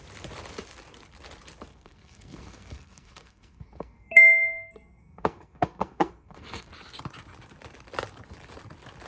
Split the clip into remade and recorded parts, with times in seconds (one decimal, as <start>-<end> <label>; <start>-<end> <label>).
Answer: 0.0-1.7 recorded; 1.7-6.7 remade; 6.7-9.1 recorded